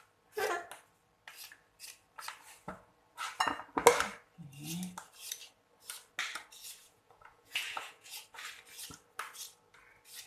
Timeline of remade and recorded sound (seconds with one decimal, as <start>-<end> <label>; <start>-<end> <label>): 0.0-6.8 recorded; 6.8-8.2 remade; 8.2-10.3 recorded